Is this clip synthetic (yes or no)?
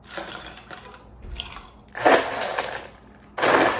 no